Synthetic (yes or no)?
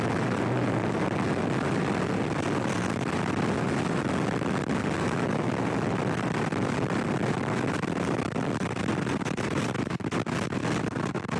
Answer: no